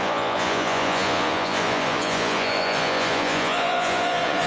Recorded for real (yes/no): no